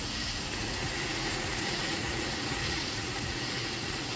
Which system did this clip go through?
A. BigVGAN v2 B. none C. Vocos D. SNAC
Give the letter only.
C